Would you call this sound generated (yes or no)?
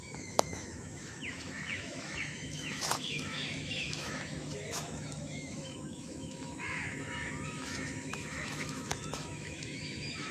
yes